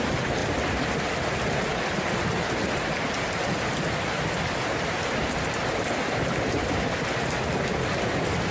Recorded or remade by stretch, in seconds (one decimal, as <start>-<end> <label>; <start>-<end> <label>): 0.0-0.4 recorded; 0.4-1.1 remade; 1.1-8.5 recorded